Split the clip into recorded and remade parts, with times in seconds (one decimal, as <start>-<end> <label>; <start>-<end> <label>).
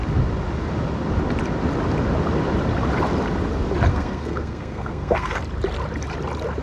0.0-3.9 recorded; 3.9-5.4 remade; 5.4-6.6 recorded